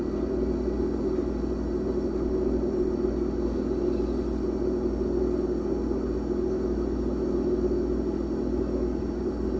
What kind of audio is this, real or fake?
real